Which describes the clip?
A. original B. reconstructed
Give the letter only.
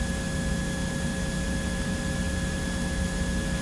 A